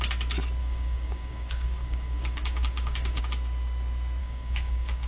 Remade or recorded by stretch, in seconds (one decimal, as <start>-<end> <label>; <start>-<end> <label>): 0.0-0.6 recorded; 0.6-3.2 remade; 3.2-4.2 recorded; 4.2-5.1 remade